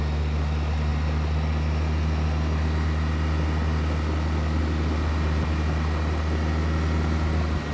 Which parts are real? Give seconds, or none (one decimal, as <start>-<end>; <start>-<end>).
0.0-7.7